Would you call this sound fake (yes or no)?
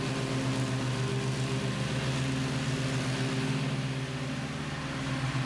no